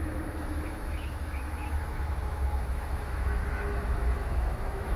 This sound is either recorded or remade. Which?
remade